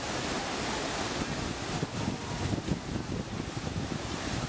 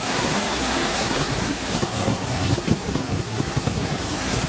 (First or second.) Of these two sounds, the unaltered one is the first